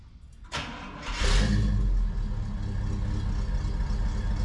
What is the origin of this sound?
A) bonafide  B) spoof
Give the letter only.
A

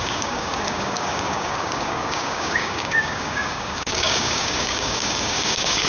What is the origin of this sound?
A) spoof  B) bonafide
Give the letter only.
A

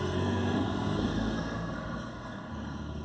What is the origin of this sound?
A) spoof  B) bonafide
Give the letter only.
A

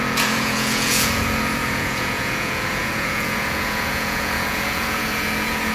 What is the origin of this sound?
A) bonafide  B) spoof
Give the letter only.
B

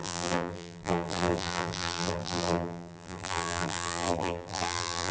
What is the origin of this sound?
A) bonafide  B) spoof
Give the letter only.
B